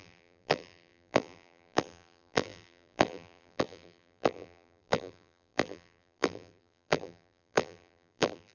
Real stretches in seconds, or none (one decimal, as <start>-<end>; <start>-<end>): none